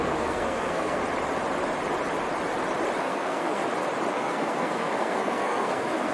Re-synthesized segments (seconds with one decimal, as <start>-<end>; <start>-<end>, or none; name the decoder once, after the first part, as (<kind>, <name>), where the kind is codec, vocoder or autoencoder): 0.0-1.0 (codec, SNAC); 3.0-3.6; 4.1-6.1